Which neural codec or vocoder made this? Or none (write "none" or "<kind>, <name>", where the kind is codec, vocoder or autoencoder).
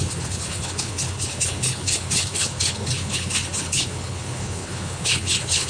codec, HILCodec